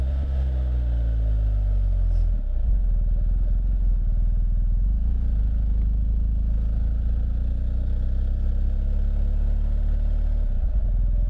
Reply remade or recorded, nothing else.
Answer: recorded